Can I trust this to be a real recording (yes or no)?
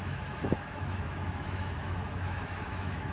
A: no